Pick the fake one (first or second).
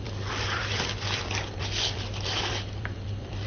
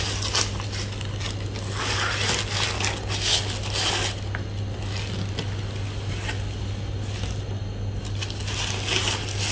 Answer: first